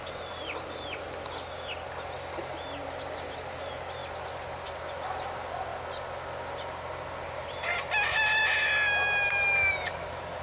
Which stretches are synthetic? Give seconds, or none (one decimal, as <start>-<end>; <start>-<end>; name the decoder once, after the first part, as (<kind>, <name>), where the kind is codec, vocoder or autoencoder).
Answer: none